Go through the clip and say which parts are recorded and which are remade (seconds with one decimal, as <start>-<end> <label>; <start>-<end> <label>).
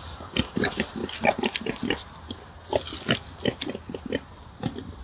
0.0-1.0 remade; 1.0-4.0 recorded; 4.0-5.0 remade